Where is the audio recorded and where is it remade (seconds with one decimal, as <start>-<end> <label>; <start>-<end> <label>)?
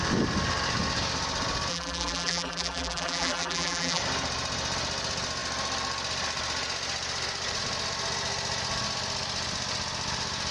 0.0-1.7 recorded; 1.7-4.0 remade; 4.0-10.5 recorded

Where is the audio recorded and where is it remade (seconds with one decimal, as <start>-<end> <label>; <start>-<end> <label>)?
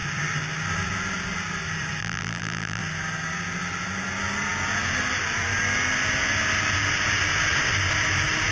0.0-2.0 recorded; 2.0-2.8 remade; 2.8-8.5 recorded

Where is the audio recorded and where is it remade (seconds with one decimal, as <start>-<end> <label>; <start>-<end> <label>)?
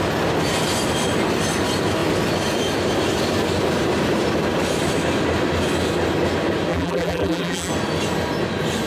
0.0-6.7 recorded; 6.7-7.7 remade; 7.7-8.9 recorded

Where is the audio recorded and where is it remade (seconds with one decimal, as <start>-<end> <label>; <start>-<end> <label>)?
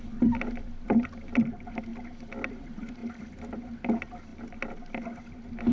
0.0-1.9 remade; 1.9-2.5 recorded; 2.5-4.3 remade; 4.3-5.2 recorded; 5.2-5.7 remade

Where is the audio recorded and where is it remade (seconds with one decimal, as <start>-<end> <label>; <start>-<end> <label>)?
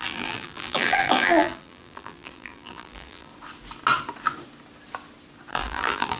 0.0-3.3 remade; 3.3-5.5 recorded; 5.5-6.2 remade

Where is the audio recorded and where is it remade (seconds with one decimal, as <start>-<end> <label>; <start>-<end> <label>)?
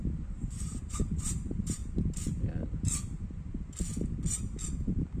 0.0-1.8 remade; 1.8-5.2 recorded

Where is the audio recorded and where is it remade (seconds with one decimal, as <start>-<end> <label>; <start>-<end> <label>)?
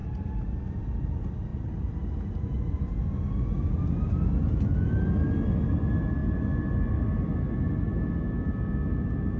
0.0-0.8 remade; 0.8-1.5 recorded; 1.5-3.1 remade; 3.1-9.4 recorded